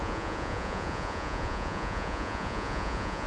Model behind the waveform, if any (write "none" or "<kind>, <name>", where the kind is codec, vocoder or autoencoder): vocoder, Vocos